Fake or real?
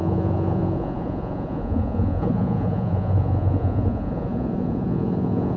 fake